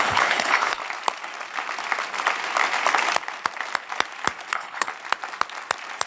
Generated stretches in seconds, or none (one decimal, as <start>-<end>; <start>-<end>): 0.0-0.8; 4.5-4.9